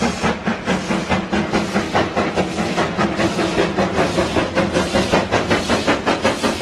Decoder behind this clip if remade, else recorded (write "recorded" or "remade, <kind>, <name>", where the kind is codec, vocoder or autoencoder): recorded